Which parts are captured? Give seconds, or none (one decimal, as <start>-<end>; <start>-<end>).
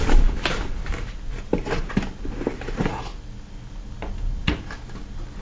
0.0-5.4